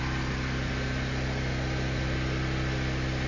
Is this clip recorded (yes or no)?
yes